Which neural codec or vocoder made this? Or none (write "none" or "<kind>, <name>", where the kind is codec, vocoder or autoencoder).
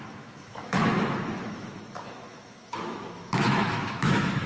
autoencoder, DAC-VAE